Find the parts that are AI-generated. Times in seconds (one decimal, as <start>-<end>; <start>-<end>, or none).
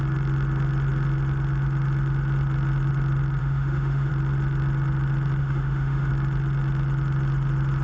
3.4-4.1; 5.4-6.1